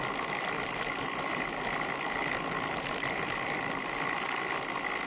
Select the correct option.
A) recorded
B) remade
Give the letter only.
A